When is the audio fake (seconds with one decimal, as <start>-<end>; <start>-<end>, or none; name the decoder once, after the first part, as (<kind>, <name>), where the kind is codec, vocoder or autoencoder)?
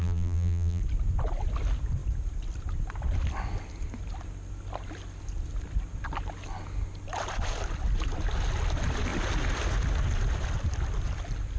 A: 0.0-0.8 (vocoder, BigVGAN v2)